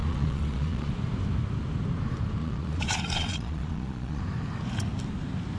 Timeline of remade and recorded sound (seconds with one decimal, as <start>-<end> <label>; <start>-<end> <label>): 0.0-0.9 remade; 0.9-2.4 recorded; 2.4-4.2 remade; 4.2-5.6 recorded